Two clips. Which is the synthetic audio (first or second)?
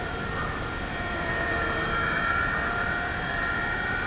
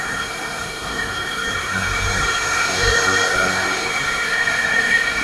second